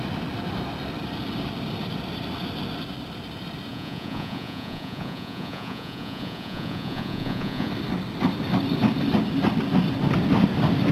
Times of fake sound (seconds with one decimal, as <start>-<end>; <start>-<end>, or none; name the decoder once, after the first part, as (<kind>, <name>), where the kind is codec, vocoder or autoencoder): 3.7-7.7 (vocoder, Vocos)

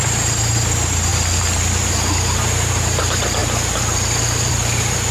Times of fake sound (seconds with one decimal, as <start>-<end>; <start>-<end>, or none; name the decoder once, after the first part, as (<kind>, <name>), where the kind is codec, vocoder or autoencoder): 0.0-1.1 (vocoder, BigVGAN v2); 1.9-3.4; 4.5-5.1

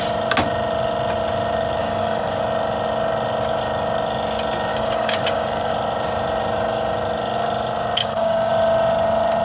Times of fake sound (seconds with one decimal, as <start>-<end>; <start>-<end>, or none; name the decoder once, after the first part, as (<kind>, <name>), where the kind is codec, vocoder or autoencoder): 1.8-2.4 (codec, DAC); 4.7-5.7; 8.0-8.5

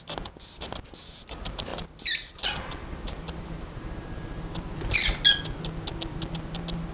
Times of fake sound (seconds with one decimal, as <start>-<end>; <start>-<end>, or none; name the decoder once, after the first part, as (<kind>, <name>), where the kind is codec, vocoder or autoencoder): none

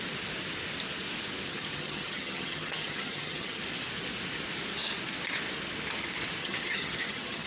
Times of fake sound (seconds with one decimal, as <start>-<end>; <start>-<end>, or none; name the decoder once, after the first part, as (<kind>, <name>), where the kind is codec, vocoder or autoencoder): 1.5-3.6 (vocoder, HiFi-GAN); 6.4-7.5

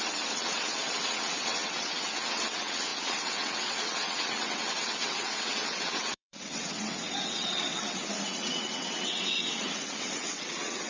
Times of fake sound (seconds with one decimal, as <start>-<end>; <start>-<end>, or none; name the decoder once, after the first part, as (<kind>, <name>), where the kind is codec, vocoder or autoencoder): 0.0-10.9 (vocoder, WaveNeXt)

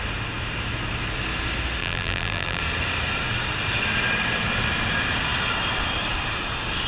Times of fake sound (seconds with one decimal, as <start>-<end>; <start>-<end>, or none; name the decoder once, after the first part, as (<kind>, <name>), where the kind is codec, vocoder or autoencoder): 1.8-2.6 (vocoder, BigVGAN v2)

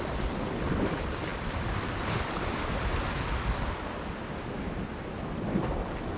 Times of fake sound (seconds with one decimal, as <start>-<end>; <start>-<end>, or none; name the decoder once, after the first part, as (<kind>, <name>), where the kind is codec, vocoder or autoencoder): none